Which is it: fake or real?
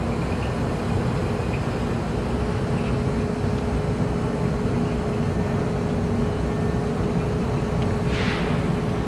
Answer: real